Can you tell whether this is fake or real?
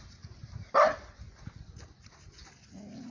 real